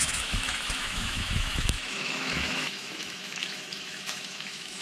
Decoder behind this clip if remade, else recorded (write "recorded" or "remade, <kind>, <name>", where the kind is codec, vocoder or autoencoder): remade, autoencoder, DAC-VAE